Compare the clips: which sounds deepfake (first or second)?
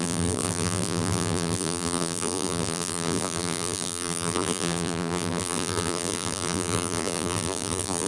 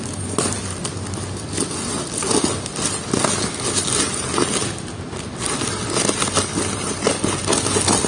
first